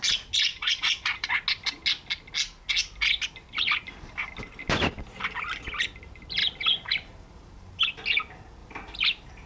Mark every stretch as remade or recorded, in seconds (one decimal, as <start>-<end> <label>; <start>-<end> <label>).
0.0-0.5 recorded; 0.5-1.3 remade; 1.3-6.4 recorded; 6.4-7.8 remade; 7.8-8.6 recorded; 8.6-9.5 remade